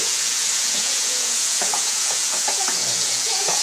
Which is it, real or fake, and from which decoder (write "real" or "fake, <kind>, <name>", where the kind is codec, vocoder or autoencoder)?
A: fake, vocoder, Vocos